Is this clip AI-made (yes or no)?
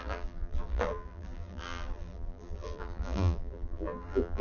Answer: yes